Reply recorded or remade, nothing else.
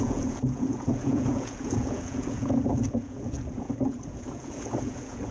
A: remade